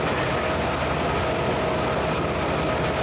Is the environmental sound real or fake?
real